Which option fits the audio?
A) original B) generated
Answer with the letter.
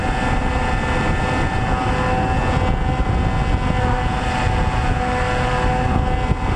A